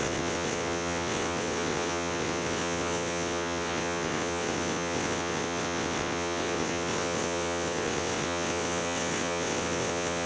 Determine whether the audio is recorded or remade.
remade